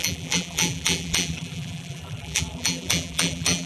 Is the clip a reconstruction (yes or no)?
yes